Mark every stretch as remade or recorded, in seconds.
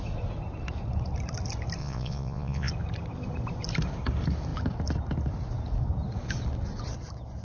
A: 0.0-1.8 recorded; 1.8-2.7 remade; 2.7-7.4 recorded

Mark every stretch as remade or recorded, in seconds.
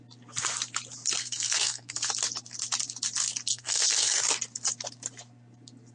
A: 0.0-1.2 recorded; 1.2-2.1 remade; 2.1-3.5 recorded; 3.5-4.2 remade; 4.2-5.9 recorded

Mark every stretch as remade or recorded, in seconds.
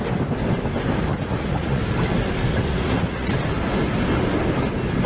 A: 0.0-1.1 recorded; 1.1-1.8 remade; 1.8-2.5 recorded; 2.5-3.3 remade; 3.3-5.1 recorded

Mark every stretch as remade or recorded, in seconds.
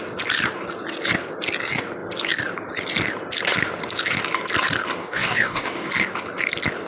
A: 0.0-5.0 recorded; 5.0-5.9 remade; 5.9-6.9 recorded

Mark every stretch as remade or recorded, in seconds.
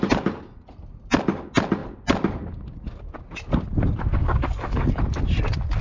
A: 0.0-4.2 recorded; 4.2-5.0 remade; 5.0-5.8 recorded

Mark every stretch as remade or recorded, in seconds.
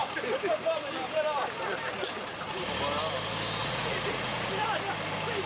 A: 0.0-3.6 recorded; 3.6-4.5 remade; 4.5-5.5 recorded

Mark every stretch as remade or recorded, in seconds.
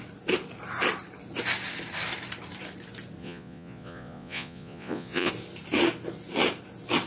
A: 0.0-3.2 recorded; 3.2-5.3 remade; 5.3-7.1 recorded